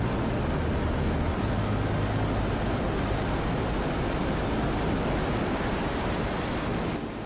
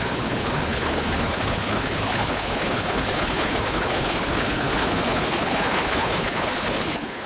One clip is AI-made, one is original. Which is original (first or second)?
first